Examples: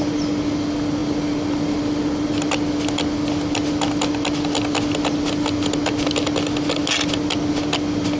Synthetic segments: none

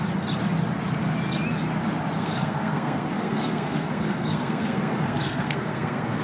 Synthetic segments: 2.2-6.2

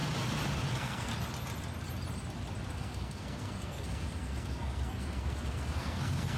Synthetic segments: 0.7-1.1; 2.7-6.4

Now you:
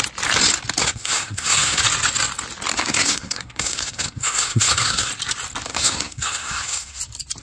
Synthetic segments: 0.8-1.8; 2.7-5.1; 5.7-7.0

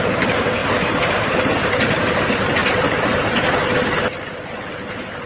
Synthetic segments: 0.6-2.2

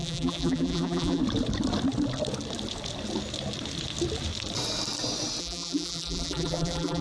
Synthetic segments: 0.0-1.2; 5.4-7.0

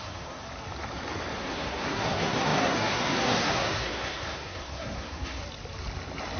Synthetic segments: 0.0-0.4; 1.4-5.4

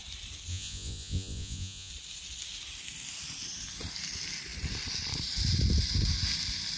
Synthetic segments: 0.5-1.9